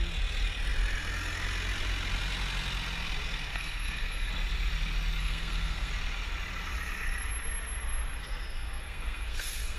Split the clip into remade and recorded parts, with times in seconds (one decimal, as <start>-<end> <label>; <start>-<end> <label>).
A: 0.0-3.5 recorded; 3.5-4.3 remade; 4.3-5.2 recorded; 5.2-5.9 remade; 5.9-8.2 recorded; 8.2-9.8 remade